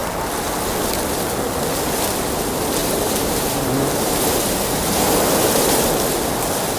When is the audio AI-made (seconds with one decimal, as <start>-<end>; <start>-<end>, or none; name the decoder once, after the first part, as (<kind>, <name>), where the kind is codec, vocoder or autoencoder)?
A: 2.8-5.9 (vocoder, BigVGAN v2)